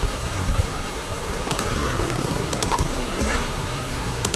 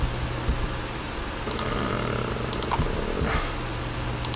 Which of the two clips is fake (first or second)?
first